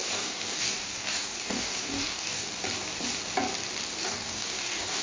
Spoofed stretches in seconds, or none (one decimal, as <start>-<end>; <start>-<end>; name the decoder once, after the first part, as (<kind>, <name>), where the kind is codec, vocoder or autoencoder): 0.0-2.5 (codec, DAC); 4.0-5.0